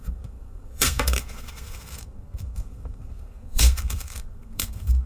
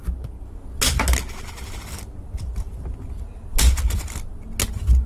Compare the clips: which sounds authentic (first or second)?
second